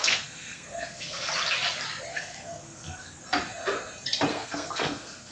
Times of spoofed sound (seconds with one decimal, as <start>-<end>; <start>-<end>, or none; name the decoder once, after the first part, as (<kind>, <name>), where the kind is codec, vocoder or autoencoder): 0.0-1.3 (codec, SNAC); 2.1-3.2; 4.3-5.3